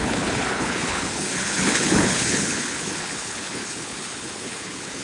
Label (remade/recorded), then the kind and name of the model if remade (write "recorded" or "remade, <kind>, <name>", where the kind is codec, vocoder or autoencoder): remade, codec, HILCodec